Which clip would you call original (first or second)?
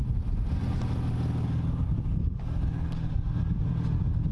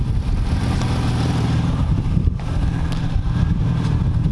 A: first